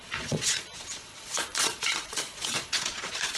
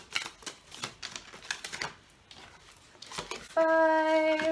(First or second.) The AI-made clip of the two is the first